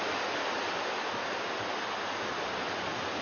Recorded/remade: recorded